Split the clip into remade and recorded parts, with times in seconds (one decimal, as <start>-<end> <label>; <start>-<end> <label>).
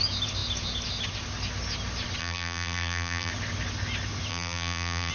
0.0-2.2 recorded; 2.2-3.3 remade; 3.3-4.3 recorded; 4.3-5.1 remade